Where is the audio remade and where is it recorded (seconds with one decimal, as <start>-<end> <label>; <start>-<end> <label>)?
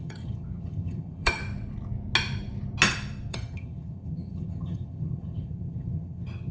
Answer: 0.0-1.4 remade; 1.4-3.3 recorded; 3.3-6.5 remade